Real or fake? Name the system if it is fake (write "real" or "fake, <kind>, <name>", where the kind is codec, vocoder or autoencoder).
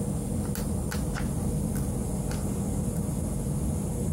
real